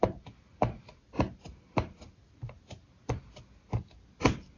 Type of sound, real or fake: real